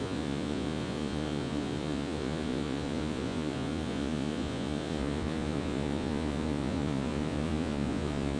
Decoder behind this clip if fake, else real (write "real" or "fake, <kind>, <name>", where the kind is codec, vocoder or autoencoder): fake, vocoder, Vocos